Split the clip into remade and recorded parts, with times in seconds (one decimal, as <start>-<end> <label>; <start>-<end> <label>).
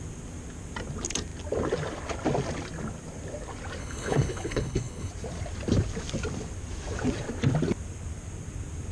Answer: 0.0-3.8 recorded; 3.8-5.1 remade; 5.1-8.9 recorded